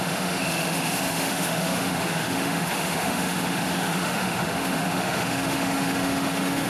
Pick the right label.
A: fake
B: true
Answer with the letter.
A